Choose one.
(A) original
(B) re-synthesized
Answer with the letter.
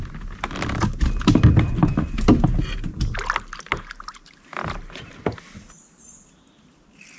A